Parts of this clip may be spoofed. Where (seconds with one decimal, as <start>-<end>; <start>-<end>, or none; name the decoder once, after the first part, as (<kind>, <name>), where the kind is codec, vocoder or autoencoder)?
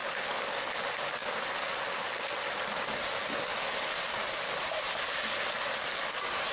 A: 0.0-0.6 (vocoder, BigVGAN v2); 1.2-1.8; 3.2-4.9